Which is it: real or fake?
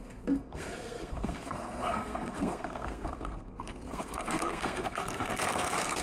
fake